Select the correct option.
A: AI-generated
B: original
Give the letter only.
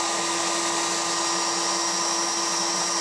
B